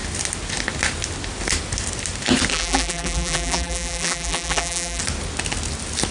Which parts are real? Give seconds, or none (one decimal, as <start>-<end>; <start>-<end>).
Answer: 0.0-2.5; 5.0-6.1